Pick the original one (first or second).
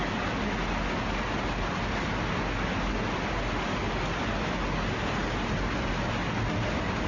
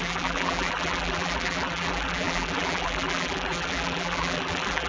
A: first